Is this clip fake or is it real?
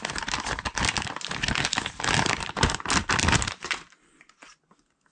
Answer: real